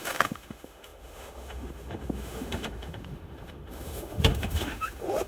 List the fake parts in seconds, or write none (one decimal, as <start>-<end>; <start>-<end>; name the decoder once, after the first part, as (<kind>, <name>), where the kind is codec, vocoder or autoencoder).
0.0-5.3 (autoencoder, DAC-VAE)